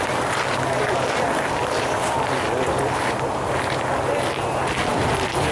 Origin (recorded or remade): recorded